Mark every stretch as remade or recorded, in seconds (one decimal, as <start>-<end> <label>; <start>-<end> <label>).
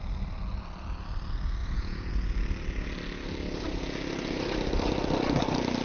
0.0-1.6 recorded; 1.6-2.1 remade; 2.1-5.8 recorded